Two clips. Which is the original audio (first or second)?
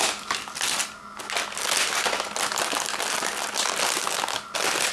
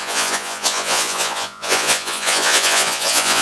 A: first